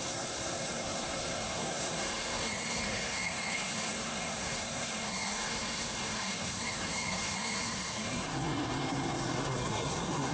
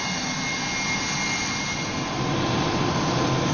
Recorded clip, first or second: second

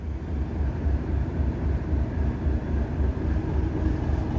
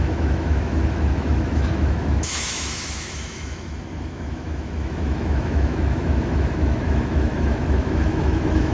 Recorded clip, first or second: first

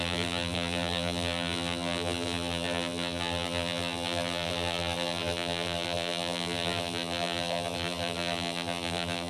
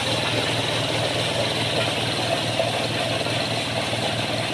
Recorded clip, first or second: second